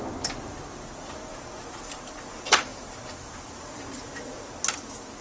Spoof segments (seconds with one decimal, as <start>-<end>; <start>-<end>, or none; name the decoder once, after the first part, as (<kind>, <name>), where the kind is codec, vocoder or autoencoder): 1.3-2.3 (vocoder, BigVGAN v2); 2.7-4.5